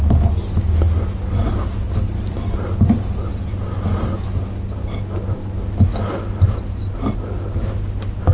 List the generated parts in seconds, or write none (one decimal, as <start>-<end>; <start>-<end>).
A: none